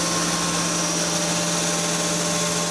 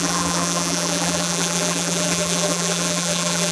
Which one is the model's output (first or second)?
second